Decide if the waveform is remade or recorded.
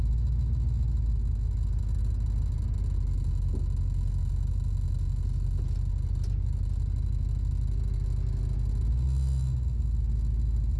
recorded